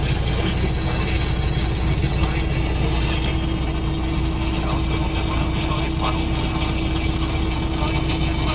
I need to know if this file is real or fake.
real